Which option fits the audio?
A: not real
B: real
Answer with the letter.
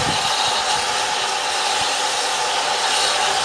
B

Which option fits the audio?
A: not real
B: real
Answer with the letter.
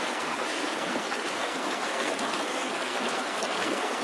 A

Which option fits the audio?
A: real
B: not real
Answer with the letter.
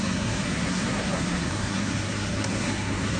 B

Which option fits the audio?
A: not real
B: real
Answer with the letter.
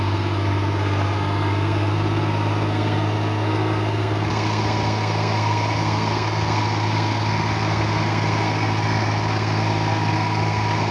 A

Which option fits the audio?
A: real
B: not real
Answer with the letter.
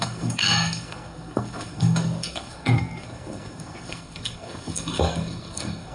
B